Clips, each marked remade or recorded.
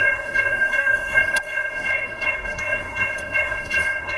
remade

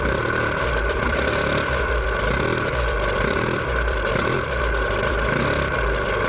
remade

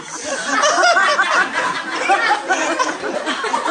recorded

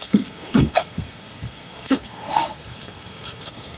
remade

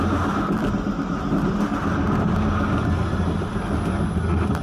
recorded